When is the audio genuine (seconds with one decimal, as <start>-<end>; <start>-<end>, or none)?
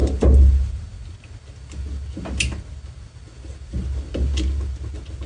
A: 0.0-5.3